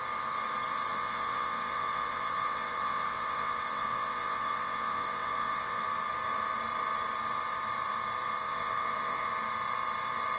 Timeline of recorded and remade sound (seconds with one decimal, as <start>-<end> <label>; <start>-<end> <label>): 0.0-0.9 recorded; 0.9-5.8 remade; 5.8-8.4 recorded; 8.4-9.3 remade; 9.3-10.4 recorded